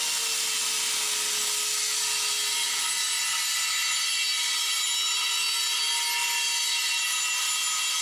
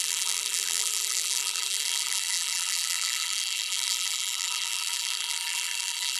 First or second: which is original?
first